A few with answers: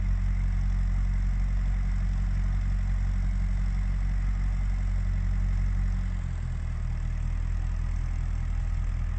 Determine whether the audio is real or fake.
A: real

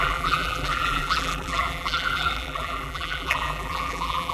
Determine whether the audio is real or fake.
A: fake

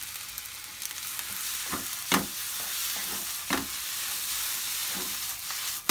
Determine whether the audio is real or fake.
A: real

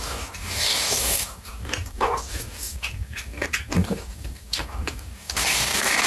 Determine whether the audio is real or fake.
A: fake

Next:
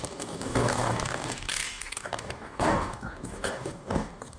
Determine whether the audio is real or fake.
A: fake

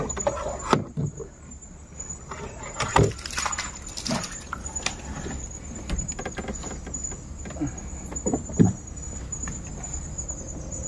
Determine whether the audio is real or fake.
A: real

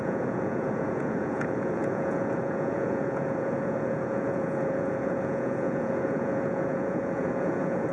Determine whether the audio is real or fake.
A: fake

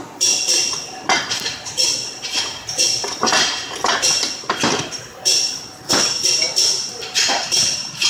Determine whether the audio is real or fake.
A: fake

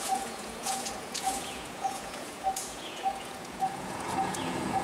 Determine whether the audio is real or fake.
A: fake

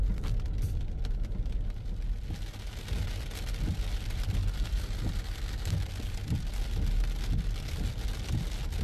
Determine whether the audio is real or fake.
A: real